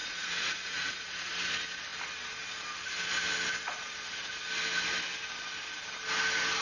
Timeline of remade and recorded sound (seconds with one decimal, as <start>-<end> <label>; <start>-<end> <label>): 0.0-1.3 remade; 1.3-6.6 recorded